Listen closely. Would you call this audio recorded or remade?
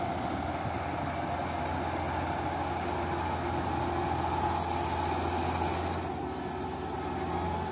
recorded